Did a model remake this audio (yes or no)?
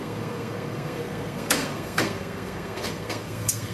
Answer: yes